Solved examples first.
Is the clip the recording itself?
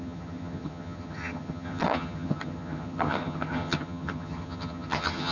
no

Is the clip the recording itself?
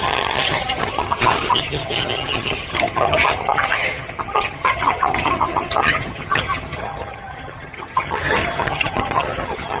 no